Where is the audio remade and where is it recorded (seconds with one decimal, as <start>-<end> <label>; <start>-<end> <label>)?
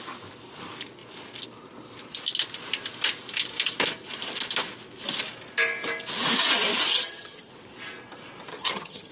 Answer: 0.0-6.9 recorded; 6.9-7.5 remade; 7.5-8.5 recorded; 8.5-9.1 remade